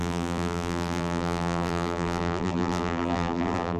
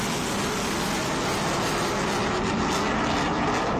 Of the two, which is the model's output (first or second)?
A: first